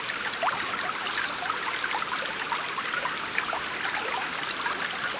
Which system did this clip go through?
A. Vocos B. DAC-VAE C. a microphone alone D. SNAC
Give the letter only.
C